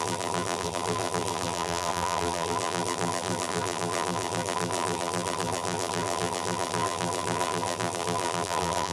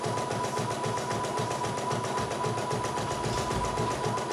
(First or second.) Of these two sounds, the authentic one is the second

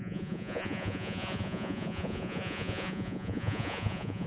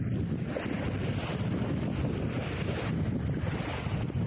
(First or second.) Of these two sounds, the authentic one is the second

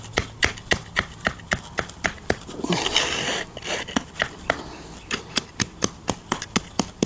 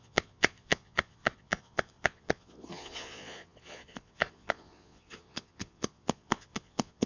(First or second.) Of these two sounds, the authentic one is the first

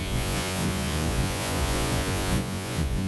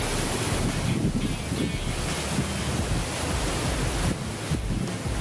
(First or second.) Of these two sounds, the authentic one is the second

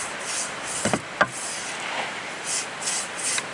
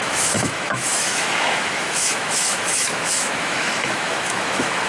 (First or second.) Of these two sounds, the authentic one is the first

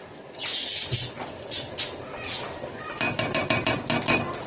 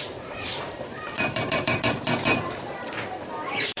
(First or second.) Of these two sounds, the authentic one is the first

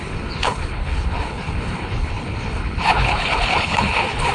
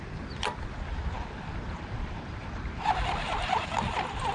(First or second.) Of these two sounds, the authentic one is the second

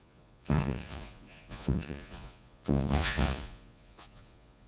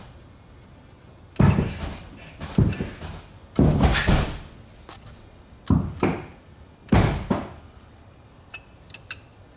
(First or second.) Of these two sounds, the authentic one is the second